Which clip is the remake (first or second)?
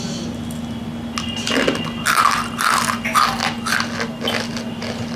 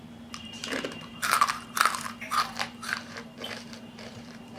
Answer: second